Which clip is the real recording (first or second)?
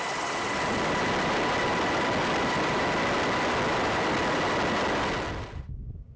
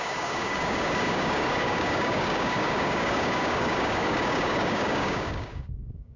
first